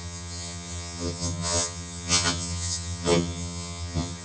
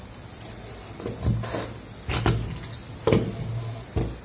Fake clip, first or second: first